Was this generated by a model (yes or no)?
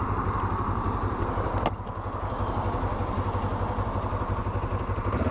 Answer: no